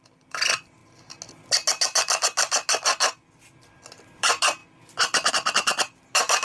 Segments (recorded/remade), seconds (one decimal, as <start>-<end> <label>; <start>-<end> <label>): 0.0-0.8 remade; 0.8-4.0 recorded; 4.0-6.4 remade